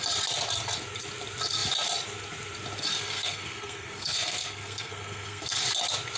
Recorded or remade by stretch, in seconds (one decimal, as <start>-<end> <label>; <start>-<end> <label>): 0.0-2.9 recorded; 2.9-5.6 remade; 5.6-6.2 recorded